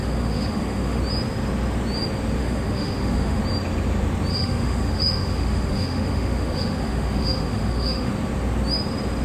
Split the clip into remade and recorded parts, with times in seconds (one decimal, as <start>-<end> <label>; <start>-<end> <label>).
0.0-1.0 remade; 1.0-2.4 recorded; 2.4-3.4 remade; 3.4-4.3 recorded; 4.3-8.1 remade; 8.1-9.2 recorded